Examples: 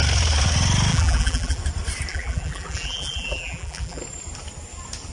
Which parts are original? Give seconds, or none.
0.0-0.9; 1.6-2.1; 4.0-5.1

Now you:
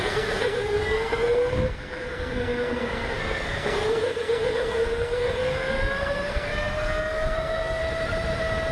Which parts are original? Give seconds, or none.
7.8-8.7

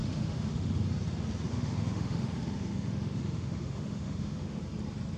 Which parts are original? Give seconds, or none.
0.8-1.5; 4.6-5.2

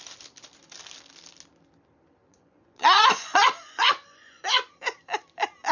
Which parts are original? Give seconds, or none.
0.0-2.2; 4.7-5.7

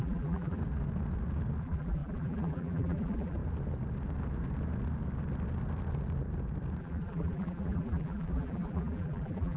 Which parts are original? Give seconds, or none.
0.6-1.6; 3.4-6.8